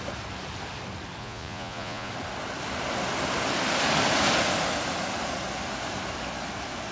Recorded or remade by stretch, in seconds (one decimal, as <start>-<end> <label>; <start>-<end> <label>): 0.0-1.2 recorded; 1.2-2.1 remade; 2.1-6.9 recorded